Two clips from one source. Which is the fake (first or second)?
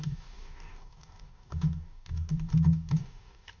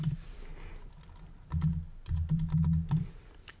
first